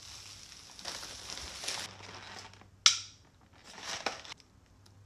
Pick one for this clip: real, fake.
real